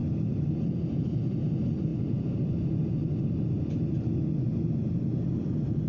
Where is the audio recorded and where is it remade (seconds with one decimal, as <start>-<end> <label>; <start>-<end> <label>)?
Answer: 0.0-5.9 recorded